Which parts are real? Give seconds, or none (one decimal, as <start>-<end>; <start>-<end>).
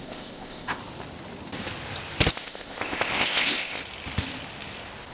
0.8-2.3; 3.8-5.1